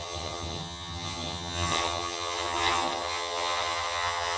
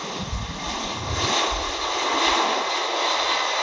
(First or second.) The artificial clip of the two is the first